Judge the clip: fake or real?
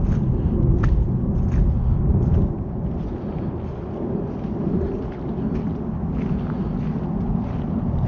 real